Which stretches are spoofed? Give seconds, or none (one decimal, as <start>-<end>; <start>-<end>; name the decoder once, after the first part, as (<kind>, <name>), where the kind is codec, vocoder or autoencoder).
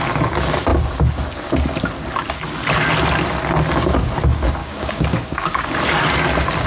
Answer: 4.6-5.7 (codec, DAC)